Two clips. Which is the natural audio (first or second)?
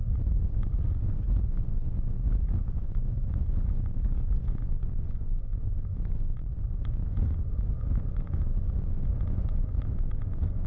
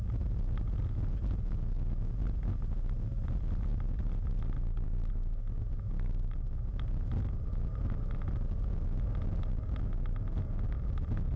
second